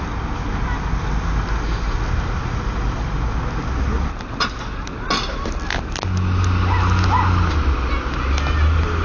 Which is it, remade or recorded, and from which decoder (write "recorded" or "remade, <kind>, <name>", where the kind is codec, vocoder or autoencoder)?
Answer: recorded